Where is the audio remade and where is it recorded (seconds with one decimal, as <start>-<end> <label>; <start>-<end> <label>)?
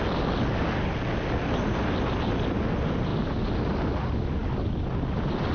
0.0-5.5 recorded